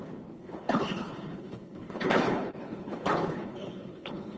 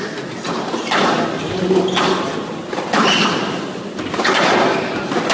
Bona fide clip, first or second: second